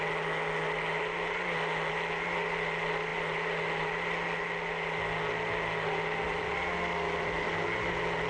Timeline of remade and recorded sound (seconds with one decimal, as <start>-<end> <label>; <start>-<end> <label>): 0.0-8.3 recorded